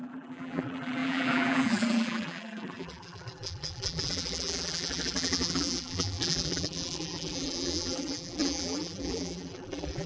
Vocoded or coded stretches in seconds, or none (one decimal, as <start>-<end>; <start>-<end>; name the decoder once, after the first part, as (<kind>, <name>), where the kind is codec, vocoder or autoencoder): 0.0-10.1 (vocoder, BigVGAN v2)